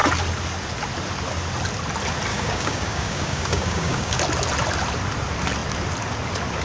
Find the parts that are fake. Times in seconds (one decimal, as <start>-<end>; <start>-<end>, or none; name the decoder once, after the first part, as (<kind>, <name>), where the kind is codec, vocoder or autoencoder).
2.3-4.2 (codec, DAC)